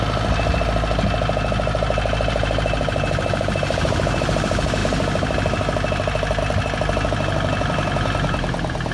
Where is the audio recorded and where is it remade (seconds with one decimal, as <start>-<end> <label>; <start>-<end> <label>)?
0.0-8.9 recorded